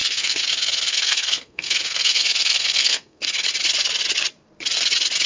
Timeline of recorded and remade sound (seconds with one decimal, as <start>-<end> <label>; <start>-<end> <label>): 0.0-3.2 remade; 3.2-5.3 recorded